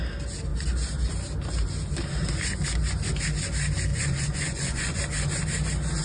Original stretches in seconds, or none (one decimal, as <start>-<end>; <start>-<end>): 0.0-3.9; 5.0-6.0